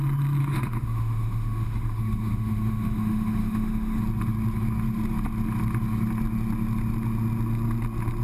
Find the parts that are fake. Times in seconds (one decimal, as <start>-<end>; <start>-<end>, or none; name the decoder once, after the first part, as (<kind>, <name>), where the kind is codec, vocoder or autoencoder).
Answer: 0.4-4.0 (autoencoder, DAC-VAE)

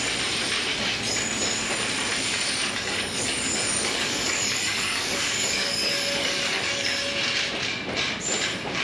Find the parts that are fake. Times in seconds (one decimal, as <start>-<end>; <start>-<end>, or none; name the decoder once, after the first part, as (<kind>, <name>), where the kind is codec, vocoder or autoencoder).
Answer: 2.6-7.0 (codec, DAC)

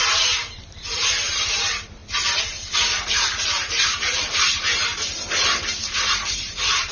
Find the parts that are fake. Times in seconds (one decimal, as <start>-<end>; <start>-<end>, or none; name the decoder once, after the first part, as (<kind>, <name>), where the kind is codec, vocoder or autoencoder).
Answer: 0.0-2.0 (vocoder, BigVGAN v2); 4.3-4.9; 6.1-6.9

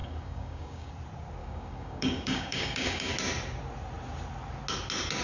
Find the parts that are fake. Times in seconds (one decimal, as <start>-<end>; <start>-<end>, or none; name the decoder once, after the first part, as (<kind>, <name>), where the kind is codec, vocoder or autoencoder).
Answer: 0.0-0.9 (codec, DAC); 1.4-3.1

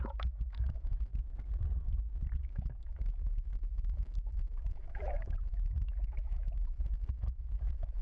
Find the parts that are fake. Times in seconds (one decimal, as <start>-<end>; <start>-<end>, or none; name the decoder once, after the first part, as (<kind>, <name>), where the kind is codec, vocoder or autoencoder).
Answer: 0.0-1.1 (autoencoder, DAC-VAE); 2.4-8.0

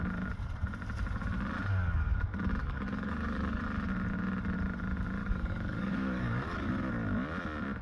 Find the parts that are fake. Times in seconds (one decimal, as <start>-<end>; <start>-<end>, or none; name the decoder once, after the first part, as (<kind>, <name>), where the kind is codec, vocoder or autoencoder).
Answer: 2.6-3.6 (codec, DAC); 5.2-6.7

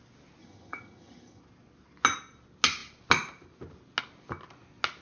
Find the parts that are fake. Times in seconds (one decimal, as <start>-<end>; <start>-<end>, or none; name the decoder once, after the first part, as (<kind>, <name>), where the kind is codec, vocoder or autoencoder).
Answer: 0.4-1.4 (vocoder, HiFi-GAN)